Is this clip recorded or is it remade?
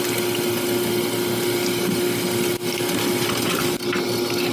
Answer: recorded